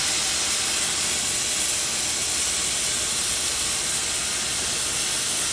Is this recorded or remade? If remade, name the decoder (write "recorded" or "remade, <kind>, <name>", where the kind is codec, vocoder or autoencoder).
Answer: recorded